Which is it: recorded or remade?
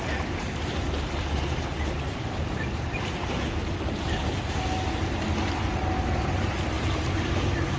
recorded